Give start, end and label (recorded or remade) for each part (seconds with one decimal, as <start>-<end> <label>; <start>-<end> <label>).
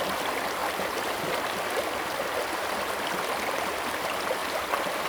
0.0-5.1 recorded